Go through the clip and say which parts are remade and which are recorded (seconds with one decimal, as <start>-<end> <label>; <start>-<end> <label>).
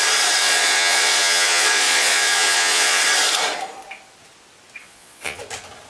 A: 0.0-0.4 recorded; 0.4-3.0 remade; 3.0-4.8 recorded; 4.8-5.4 remade; 5.4-5.9 recorded